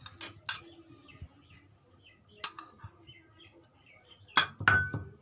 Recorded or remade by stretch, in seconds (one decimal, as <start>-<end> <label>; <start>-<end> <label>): 0.0-5.2 recorded